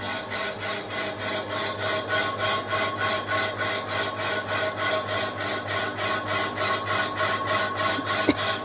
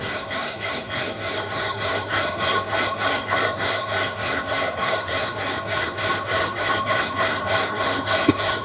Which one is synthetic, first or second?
second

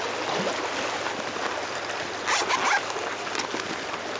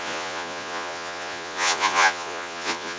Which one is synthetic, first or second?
second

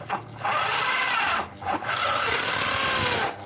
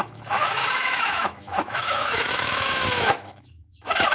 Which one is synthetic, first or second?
second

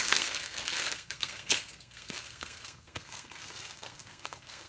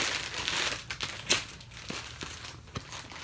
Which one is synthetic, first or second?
first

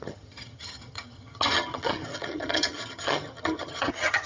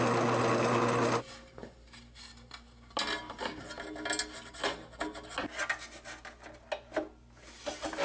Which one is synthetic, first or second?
first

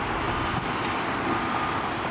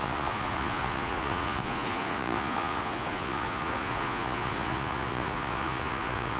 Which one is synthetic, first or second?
second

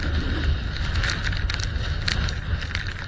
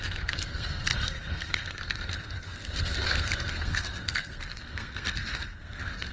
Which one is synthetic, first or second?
second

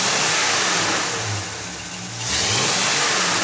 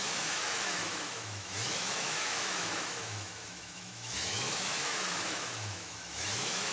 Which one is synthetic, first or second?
second